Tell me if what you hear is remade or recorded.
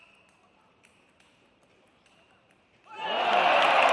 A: remade